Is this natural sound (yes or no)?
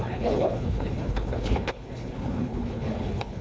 no